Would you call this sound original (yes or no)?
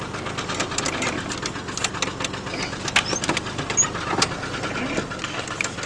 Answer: yes